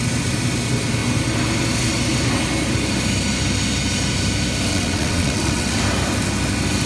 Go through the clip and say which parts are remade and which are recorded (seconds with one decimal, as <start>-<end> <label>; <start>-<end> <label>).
0.0-4.7 recorded; 4.7-5.8 remade; 5.8-6.9 recorded

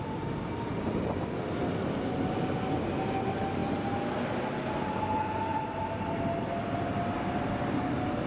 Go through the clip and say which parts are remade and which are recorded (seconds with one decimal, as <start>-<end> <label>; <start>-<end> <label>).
0.0-8.3 recorded